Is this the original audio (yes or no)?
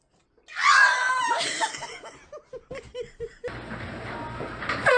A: yes